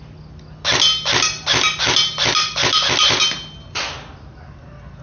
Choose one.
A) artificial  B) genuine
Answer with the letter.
B